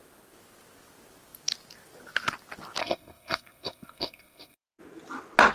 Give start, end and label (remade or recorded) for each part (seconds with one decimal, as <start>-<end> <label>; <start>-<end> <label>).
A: 0.0-2.8 recorded; 2.8-4.8 remade; 4.8-5.5 recorded